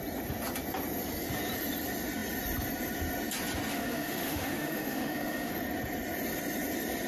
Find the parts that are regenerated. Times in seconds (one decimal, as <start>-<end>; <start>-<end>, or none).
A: 3.7-5.5